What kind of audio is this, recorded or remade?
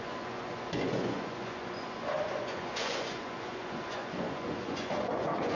remade